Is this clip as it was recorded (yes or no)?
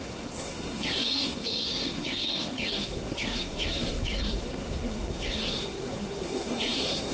no